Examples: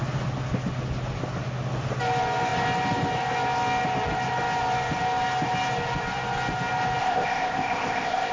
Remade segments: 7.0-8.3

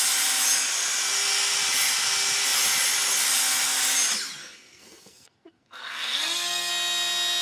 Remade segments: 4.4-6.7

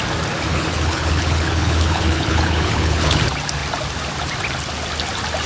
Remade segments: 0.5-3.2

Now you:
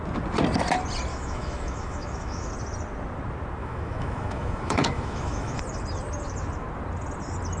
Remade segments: 1.1-2.5; 3.6-5.6

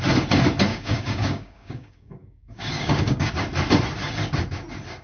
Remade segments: 0.7-3.3

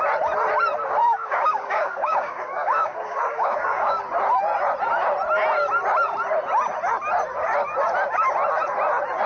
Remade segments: 1.0-4.0